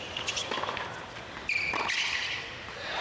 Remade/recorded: recorded